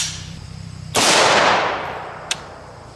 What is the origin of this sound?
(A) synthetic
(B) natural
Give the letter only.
A